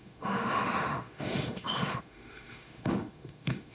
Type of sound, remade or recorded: remade